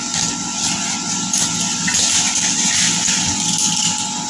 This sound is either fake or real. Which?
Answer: real